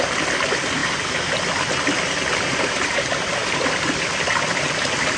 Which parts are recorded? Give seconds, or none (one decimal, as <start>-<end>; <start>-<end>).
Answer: 0.0-5.2

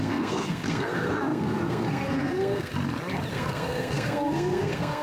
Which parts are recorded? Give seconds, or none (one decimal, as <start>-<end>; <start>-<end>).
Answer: 2.7-3.3

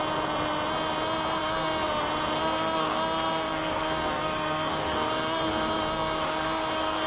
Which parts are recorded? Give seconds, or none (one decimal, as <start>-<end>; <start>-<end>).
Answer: 0.0-1.4; 2.0-2.4

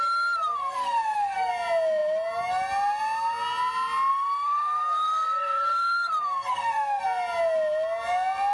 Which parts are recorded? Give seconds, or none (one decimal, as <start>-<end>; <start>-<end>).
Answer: 0.0-0.5; 1.5-4.1; 7.0-8.5

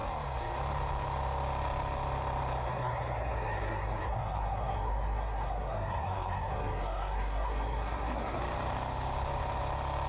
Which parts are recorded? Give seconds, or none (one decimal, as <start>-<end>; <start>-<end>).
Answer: 0.0-2.7; 8.4-10.1